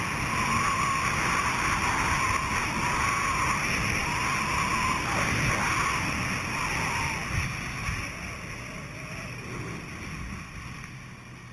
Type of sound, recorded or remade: recorded